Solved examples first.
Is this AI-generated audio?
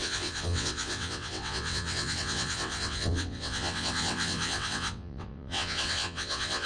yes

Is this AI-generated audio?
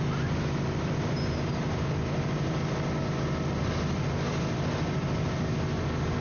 no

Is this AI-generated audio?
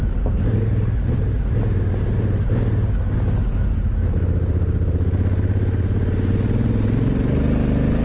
no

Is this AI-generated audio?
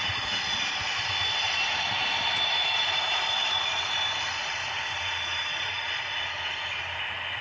no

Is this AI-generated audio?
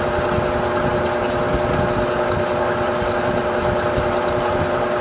no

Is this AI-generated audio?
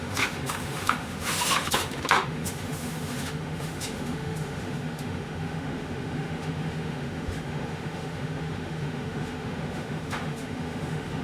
yes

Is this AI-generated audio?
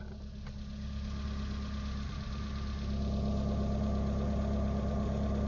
no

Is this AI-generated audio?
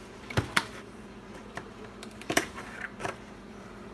yes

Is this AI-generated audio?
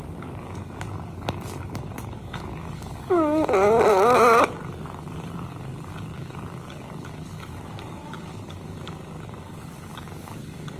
yes